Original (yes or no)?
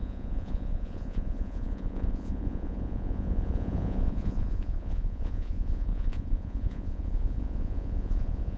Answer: no